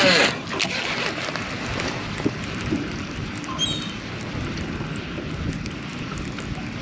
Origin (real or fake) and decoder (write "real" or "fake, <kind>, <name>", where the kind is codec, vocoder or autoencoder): real